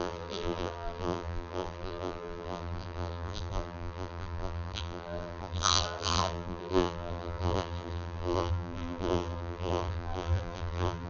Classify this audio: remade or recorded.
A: remade